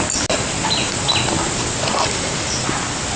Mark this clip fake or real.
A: real